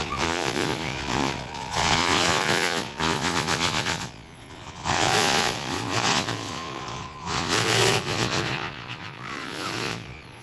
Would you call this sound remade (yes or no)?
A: yes